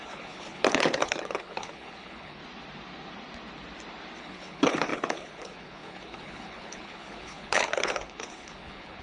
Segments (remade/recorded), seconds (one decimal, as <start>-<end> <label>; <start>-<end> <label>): 0.0-2.4 remade; 2.4-4.2 recorded; 4.2-9.0 remade